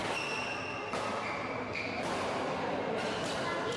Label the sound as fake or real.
real